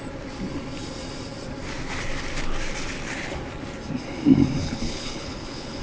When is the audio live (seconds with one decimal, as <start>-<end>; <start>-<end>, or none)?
0.0-4.6

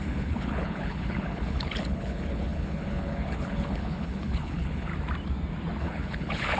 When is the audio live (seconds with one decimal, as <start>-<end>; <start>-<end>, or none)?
4.9-5.8

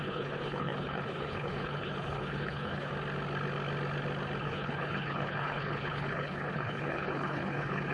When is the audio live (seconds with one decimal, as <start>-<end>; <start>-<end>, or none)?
2.9-4.4

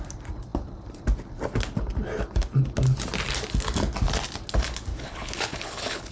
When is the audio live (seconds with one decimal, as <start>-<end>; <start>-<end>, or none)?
0.0-4.9

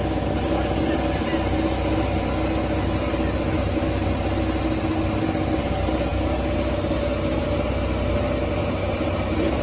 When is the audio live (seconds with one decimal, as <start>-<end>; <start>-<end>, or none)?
0.0-9.6